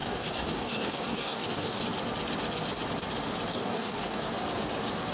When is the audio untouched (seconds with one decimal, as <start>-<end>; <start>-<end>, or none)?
1.8-3.5; 4.3-5.1